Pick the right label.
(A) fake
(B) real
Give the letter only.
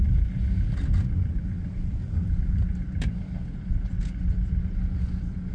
B